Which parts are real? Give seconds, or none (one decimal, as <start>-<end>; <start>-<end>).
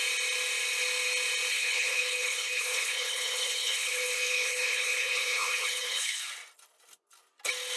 0.0-1.5; 6.2-7.8